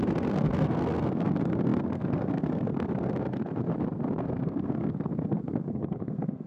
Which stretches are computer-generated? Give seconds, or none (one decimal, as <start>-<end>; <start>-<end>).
0.0-3.7; 4.2-6.5